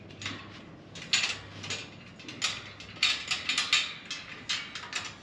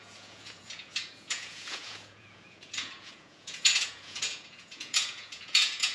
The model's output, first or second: second